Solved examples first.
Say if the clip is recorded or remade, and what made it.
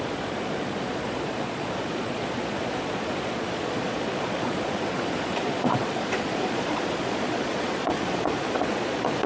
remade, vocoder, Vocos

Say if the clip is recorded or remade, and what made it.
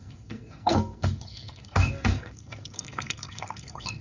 remade, codec, SNAC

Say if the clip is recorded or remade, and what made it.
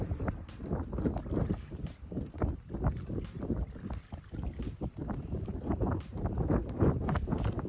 remade, vocoder, BigVGAN v2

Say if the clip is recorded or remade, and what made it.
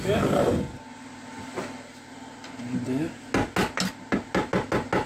recorded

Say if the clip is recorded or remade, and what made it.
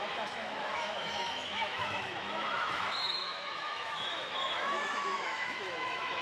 remade, autoencoder, DAC-VAE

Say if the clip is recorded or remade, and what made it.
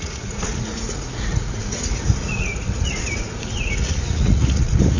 remade, vocoder, Vocos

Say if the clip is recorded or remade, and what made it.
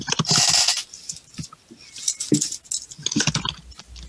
recorded